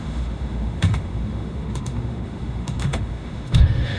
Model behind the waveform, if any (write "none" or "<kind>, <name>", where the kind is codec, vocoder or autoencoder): autoencoder, DAC-VAE